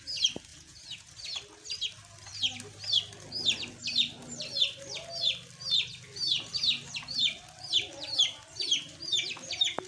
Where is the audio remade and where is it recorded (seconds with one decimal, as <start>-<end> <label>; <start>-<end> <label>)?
0.0-0.5 recorded; 0.5-1.1 remade; 1.1-9.9 recorded